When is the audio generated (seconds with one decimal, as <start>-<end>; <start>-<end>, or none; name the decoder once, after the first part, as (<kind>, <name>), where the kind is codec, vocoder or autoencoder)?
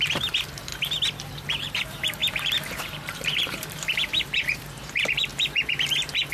0.0-0.7 (vocoder, BigVGAN v2); 1.2-5.3